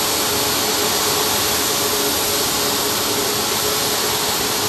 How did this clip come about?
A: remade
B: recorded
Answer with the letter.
B